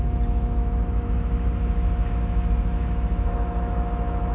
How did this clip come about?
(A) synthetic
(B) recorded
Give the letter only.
A